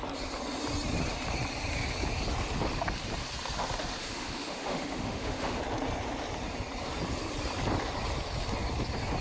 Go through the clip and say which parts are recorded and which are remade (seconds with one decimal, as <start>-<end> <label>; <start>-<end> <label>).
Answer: 0.0-4.0 recorded; 4.0-5.6 remade; 5.6-9.2 recorded